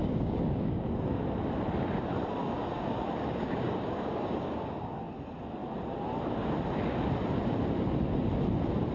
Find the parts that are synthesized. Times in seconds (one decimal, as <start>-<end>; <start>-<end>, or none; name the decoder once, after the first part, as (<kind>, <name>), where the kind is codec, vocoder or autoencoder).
0.0-1.2 (codec, DAC); 2.4-5.0

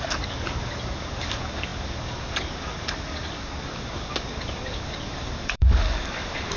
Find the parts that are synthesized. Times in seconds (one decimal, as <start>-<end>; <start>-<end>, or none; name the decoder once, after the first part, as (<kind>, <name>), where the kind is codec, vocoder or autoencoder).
0.0-6.6 (codec, DAC)

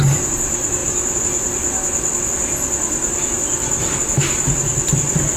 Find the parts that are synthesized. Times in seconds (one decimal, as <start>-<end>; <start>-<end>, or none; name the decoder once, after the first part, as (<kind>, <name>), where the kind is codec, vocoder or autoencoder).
none

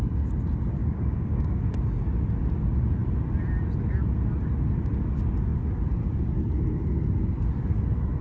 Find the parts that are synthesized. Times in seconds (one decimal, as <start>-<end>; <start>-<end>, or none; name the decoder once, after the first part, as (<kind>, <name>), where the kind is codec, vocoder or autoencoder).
0.8-1.6 (codec, DAC)

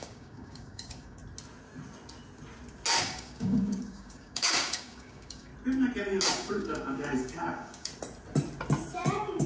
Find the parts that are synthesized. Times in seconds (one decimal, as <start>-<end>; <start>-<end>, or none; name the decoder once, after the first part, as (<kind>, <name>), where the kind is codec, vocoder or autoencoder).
0.0-1.2 (codec, DAC); 3.0-5.5; 6.3-7.9; 9.1-9.5

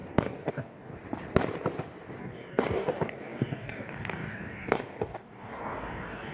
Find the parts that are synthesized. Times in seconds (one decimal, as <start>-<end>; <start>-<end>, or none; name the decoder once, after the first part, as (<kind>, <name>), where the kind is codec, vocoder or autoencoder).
0.0-0.9 (codec, DAC); 2.2-6.3

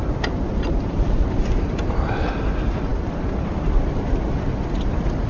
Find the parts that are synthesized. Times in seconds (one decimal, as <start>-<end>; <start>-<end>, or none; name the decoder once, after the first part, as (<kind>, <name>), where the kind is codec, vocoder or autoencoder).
none

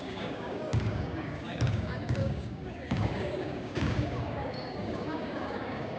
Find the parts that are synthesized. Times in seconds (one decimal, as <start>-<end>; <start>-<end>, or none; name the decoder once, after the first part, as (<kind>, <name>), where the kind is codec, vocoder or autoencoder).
0.0-6.0 (codec, DAC)